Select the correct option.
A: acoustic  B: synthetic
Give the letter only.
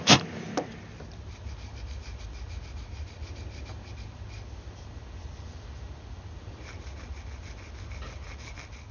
A